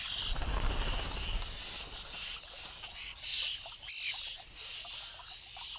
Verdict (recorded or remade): recorded